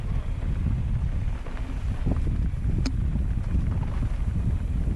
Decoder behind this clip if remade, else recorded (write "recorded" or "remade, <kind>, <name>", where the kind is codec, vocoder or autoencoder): recorded